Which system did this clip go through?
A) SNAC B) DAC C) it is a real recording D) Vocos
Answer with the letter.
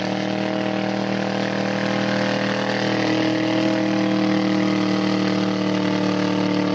C